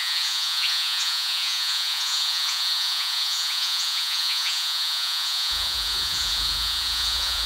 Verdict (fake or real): fake